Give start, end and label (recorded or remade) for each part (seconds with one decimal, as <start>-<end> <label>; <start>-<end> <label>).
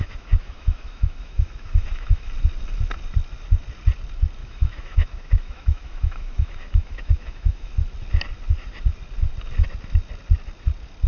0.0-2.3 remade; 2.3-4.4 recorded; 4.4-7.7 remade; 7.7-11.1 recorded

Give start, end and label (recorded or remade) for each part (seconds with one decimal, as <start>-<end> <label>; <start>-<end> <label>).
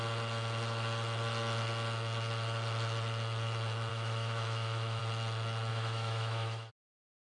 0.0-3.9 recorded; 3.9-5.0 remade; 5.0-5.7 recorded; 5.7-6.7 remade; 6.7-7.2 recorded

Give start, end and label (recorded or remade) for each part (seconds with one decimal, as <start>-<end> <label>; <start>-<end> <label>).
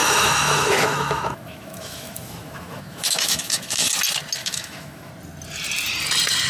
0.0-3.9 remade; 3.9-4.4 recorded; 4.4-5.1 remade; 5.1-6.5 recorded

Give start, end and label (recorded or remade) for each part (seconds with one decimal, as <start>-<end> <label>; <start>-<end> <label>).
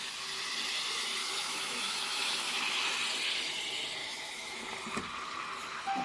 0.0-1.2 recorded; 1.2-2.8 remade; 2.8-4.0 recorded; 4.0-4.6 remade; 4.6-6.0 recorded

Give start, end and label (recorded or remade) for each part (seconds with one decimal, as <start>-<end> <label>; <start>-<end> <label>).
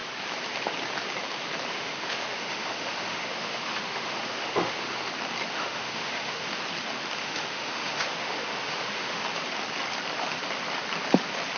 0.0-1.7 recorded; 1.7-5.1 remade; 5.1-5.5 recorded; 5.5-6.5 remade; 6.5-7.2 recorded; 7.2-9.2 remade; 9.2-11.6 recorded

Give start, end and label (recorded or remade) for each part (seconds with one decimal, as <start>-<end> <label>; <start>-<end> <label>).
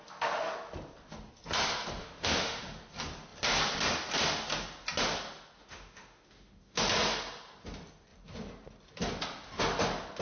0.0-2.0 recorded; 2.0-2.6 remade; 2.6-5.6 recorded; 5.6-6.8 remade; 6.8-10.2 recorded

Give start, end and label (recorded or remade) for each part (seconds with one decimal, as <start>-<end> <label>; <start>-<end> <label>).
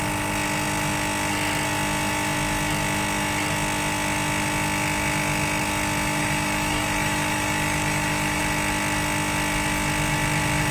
0.0-6.2 recorded; 6.2-8.4 remade; 8.4-10.7 recorded